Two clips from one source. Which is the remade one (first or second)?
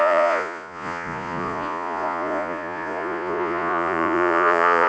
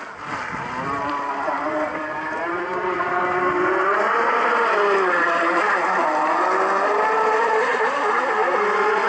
first